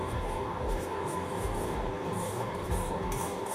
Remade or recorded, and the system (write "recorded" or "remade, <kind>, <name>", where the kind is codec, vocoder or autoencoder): remade, codec, DAC